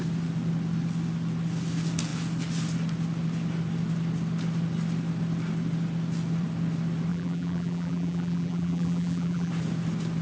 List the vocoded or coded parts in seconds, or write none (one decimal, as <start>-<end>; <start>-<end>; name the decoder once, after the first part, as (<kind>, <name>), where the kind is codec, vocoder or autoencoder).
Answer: 7.1-9.5 (vocoder, BigVGAN v2)